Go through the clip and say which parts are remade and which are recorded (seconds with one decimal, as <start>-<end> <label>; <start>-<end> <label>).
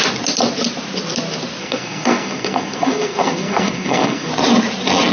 0.0-1.6 recorded; 1.6-4.3 remade; 4.3-5.1 recorded